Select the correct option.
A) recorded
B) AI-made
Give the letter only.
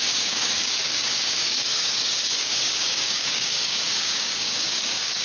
B